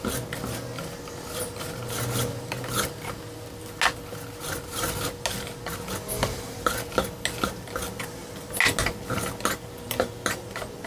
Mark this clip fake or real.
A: real